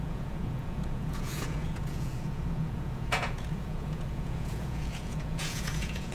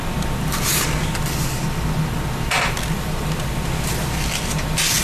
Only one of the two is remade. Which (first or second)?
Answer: first